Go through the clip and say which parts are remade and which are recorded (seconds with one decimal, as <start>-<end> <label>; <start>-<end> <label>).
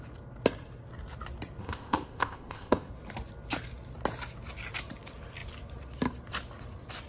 0.0-1.6 recorded; 1.6-2.9 remade; 2.9-7.1 recorded